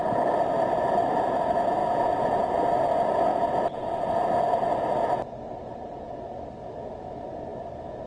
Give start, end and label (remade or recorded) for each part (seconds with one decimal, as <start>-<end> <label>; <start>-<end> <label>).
0.0-1.8 recorded; 1.8-2.5 remade; 2.5-3.3 recorded; 3.3-4.1 remade; 4.1-8.1 recorded